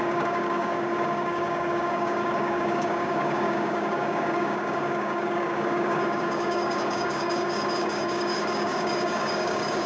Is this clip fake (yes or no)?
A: yes